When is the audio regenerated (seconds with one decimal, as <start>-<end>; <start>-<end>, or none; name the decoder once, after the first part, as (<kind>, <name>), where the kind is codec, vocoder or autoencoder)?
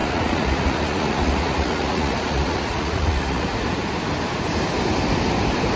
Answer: 0.0-3.5 (vocoder, Vocos)